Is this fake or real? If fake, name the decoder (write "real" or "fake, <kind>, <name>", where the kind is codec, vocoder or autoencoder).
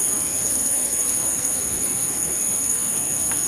fake, codec, SNAC